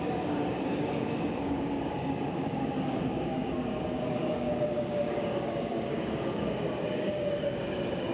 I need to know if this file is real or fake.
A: fake